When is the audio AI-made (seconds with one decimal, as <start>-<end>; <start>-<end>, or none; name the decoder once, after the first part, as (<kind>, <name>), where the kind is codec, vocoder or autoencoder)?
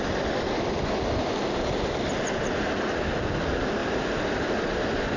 none